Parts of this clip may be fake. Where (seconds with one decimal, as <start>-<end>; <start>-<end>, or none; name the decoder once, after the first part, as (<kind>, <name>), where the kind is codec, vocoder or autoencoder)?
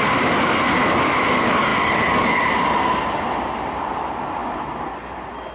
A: none